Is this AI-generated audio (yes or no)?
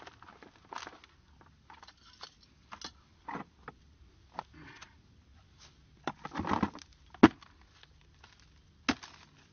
no